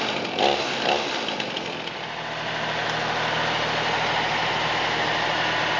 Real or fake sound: real